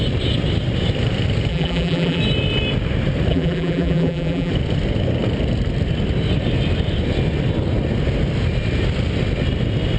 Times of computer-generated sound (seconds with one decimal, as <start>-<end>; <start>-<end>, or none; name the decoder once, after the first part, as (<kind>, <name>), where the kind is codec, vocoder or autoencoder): 1.5-2.2 (vocoder, BigVGAN v2); 3.3-4.5